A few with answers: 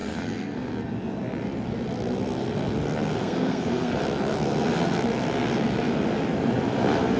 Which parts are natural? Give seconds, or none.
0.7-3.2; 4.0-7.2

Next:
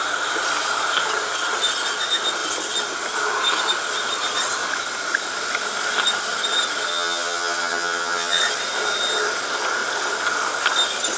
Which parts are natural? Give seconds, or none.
0.0-6.9; 8.4-11.2